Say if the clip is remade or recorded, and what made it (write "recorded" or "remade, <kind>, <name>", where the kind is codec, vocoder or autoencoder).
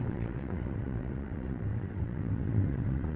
remade, vocoder, WaveNeXt